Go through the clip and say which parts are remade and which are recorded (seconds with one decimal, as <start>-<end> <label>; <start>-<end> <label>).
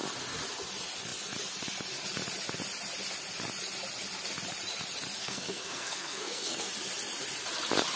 0.0-5.2 recorded; 5.2-6.7 remade; 6.7-8.0 recorded